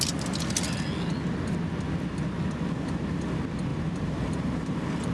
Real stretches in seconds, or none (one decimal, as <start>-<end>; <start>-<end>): 0.0-3.7